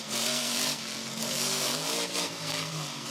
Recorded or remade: remade